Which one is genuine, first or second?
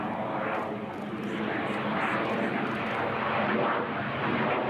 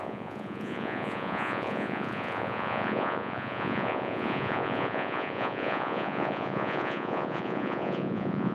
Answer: first